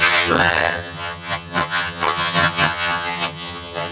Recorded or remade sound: remade